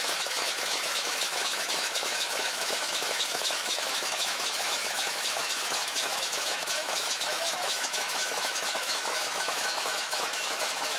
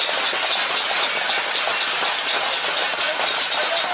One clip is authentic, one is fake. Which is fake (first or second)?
first